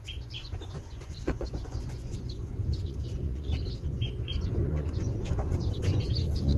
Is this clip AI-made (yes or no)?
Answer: yes